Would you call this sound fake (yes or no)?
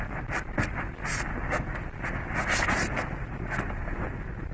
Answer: no